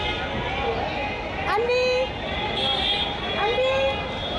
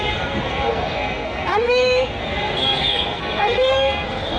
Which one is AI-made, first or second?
second